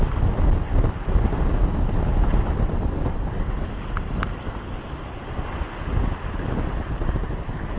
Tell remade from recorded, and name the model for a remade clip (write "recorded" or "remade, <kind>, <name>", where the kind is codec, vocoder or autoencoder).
recorded